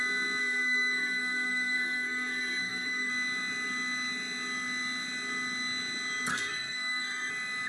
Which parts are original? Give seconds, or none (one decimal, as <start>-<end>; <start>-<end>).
0.0-0.4; 3.1-6.3; 7.3-7.7